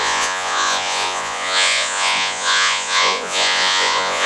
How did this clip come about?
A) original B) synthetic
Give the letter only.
B